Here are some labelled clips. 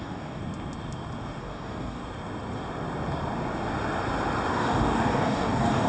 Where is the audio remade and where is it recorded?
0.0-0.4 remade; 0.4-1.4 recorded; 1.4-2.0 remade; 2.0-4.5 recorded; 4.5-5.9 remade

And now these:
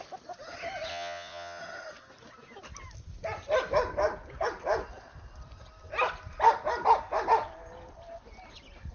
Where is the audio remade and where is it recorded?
0.0-0.9 recorded; 0.9-1.6 remade; 1.6-8.9 recorded

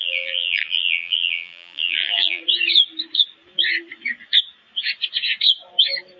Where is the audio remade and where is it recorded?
0.0-2.4 remade; 2.4-6.2 recorded

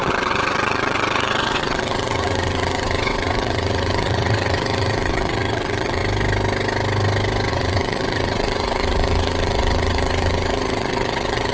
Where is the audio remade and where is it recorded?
0.0-6.0 remade; 6.0-7.5 recorded; 7.5-11.5 remade

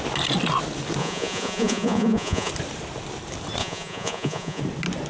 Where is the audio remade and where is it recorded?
0.0-1.0 recorded; 1.0-2.5 remade; 2.5-3.6 recorded; 3.6-4.6 remade; 4.6-5.1 recorded

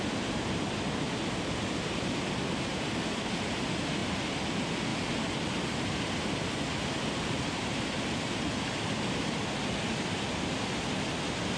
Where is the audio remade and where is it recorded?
0.0-11.6 recorded

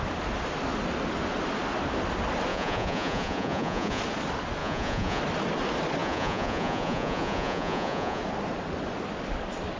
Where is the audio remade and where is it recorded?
0.0-2.5 recorded; 2.5-4.0 remade; 4.0-4.6 recorded; 4.6-5.2 remade; 5.2-6.0 recorded; 6.0-8.2 remade; 8.2-9.8 recorded

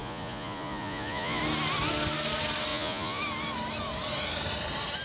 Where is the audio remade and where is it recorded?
0.0-1.4 remade; 1.4-2.7 recorded; 2.7-3.2 remade; 3.2-5.0 recorded